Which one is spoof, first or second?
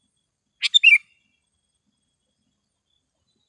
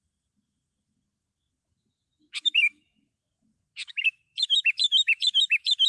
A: second